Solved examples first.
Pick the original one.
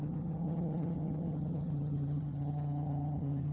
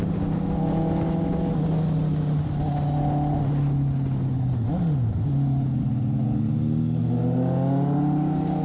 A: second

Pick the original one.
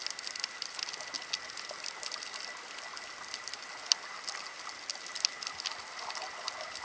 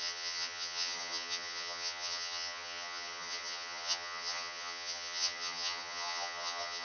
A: first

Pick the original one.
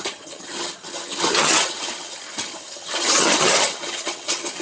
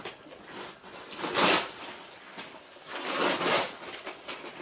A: second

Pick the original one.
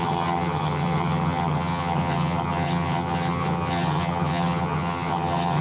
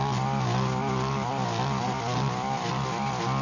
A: second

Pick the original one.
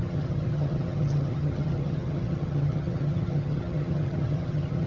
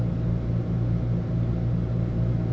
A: second